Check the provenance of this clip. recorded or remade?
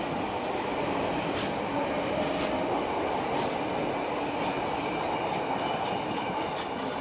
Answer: recorded